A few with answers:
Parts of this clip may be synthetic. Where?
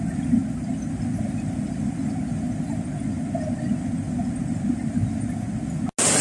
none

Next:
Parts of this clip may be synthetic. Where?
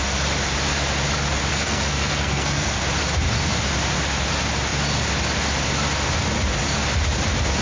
1.5-2.8 (codec, SNAC)